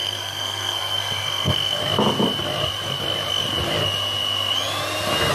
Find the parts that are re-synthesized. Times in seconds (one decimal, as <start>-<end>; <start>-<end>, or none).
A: 0.0-1.8